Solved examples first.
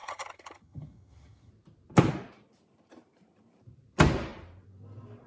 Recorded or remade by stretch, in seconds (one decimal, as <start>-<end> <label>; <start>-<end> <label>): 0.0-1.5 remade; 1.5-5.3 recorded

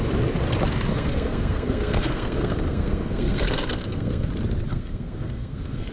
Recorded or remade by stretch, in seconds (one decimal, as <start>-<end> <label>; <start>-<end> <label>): 0.0-0.9 recorded; 0.9-4.3 remade; 4.3-4.7 recorded; 4.7-5.9 remade

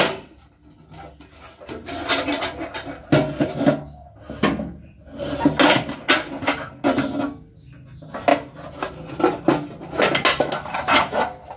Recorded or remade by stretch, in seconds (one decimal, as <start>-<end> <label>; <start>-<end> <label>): 0.0-11.6 recorded

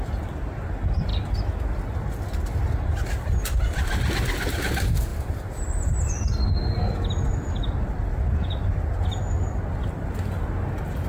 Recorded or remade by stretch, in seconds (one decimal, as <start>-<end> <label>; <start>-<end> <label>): 0.0-11.1 recorded

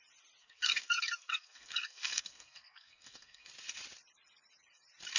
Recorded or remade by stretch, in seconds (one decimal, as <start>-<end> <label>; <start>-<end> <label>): 0.0-0.4 recorded; 0.4-3.5 remade; 3.5-5.2 recorded

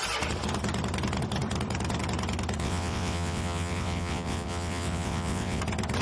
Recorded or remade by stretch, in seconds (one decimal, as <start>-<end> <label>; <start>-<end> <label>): 0.0-2.6 recorded; 2.6-5.6 remade; 5.6-6.0 recorded